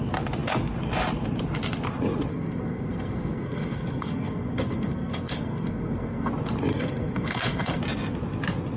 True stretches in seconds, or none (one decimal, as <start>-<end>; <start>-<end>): 0.0-2.3; 6.3-6.7; 7.8-8.8